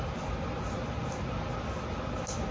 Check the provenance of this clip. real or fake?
real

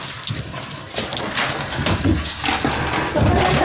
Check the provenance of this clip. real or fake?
real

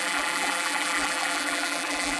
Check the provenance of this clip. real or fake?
fake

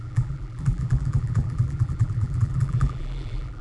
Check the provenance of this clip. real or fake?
fake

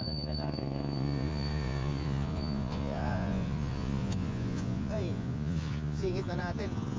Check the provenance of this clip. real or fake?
fake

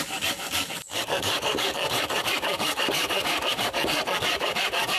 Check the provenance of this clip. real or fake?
fake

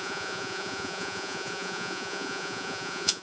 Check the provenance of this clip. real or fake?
fake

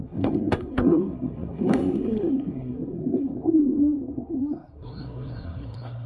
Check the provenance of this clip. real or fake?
fake